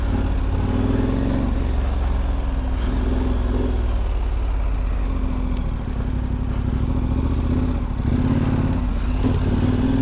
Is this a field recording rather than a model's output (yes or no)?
yes